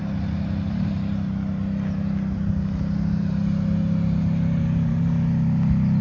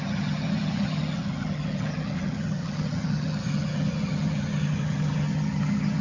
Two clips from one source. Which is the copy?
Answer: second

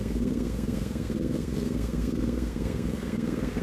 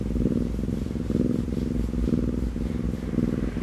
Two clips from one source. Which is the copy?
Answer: first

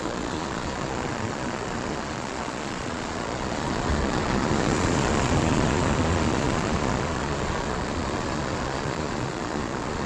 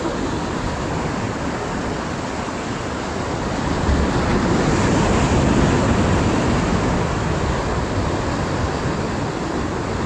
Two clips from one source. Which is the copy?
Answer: first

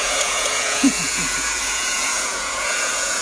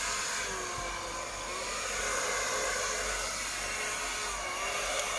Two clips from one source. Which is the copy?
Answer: first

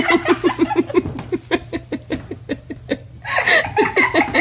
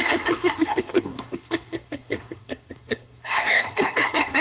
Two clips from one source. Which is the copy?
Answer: second